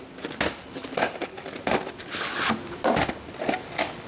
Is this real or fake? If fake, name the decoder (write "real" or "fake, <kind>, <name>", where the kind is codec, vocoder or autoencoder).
real